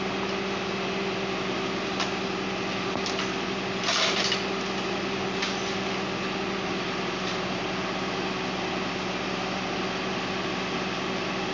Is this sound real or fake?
real